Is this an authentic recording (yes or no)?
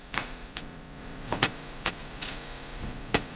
no